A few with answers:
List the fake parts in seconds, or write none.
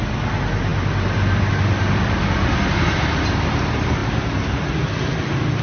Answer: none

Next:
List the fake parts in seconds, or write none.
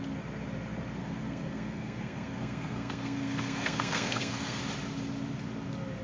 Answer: 1.0-4.6 (codec, SNAC)